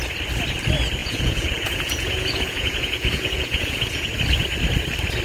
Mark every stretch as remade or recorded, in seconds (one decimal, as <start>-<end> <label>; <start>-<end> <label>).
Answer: 0.0-1.0 recorded; 1.0-4.1 remade; 4.1-5.2 recorded